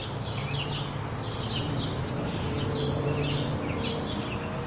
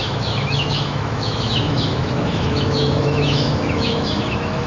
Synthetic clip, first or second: second